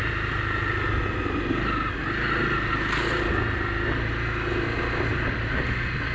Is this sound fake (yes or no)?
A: no